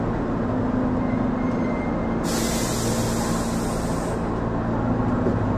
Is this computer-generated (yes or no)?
no